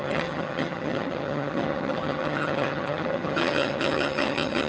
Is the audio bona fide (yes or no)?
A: no